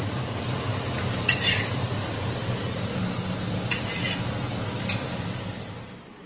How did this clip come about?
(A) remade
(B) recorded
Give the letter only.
B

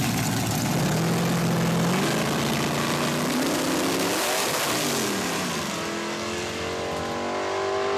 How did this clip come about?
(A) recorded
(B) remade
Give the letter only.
A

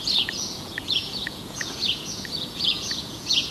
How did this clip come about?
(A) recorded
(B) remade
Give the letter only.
B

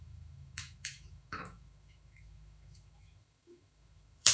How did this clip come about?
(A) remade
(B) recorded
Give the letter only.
A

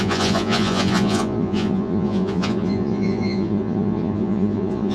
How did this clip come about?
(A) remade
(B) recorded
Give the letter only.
A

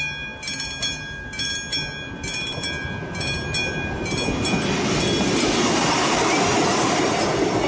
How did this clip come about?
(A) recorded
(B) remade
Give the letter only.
A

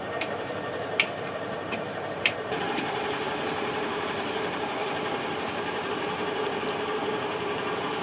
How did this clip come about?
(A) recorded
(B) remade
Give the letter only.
B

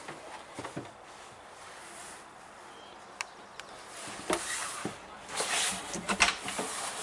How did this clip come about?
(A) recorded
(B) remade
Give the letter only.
A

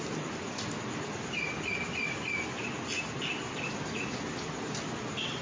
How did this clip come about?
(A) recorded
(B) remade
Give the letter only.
A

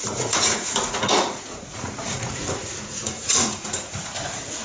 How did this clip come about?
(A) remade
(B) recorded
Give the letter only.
A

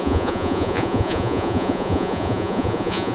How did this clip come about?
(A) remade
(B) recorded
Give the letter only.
A